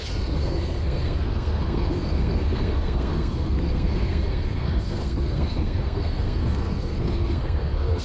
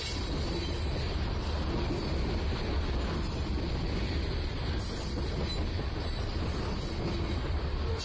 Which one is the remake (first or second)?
first